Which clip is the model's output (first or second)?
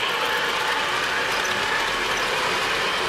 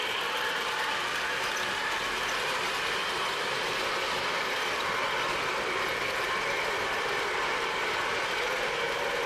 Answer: second